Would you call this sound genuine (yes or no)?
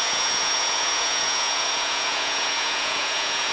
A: no